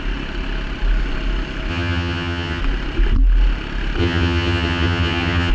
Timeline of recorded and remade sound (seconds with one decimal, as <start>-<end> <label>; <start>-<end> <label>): 0.0-1.7 recorded; 1.7-2.6 remade; 2.6-4.0 recorded; 4.0-5.5 remade